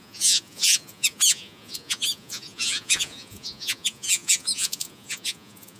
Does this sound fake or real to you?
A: fake